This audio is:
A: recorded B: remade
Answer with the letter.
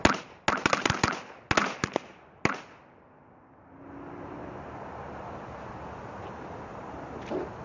A